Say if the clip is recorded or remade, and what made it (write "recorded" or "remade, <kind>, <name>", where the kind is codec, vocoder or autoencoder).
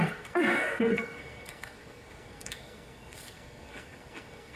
remade, codec, SNAC